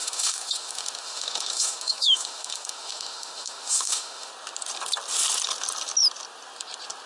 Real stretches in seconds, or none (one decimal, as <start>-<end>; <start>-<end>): 4.3-7.1